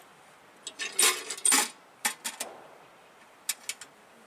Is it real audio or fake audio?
real